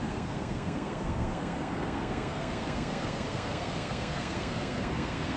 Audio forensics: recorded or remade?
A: remade